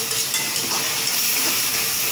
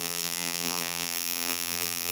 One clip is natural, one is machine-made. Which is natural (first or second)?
first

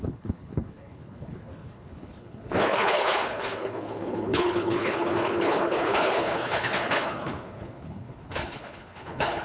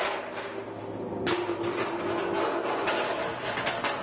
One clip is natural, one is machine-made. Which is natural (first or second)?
second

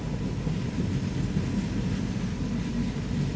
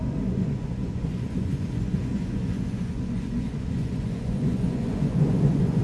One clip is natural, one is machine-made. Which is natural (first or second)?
first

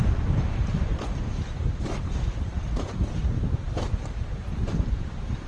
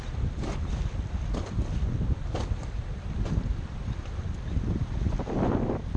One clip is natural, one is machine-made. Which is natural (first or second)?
second